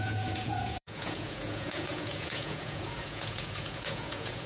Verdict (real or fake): fake